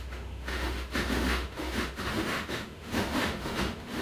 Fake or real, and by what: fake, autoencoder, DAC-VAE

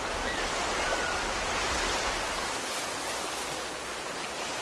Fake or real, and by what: real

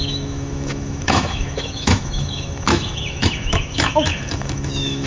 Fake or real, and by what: fake, autoencoder, DAC-VAE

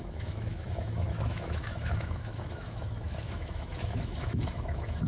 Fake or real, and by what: fake, autoencoder, DAC-VAE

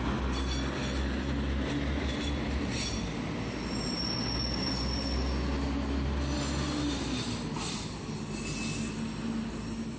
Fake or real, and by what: real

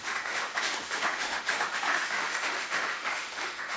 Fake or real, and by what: fake, autoencoder, DAC-VAE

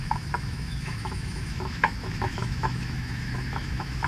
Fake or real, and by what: fake, autoencoder, DAC-VAE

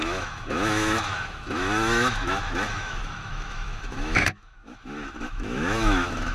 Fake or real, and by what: fake, autoencoder, DAC-VAE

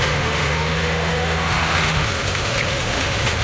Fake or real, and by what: fake, autoencoder, DAC-VAE